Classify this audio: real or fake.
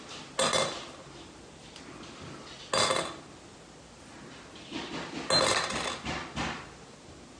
real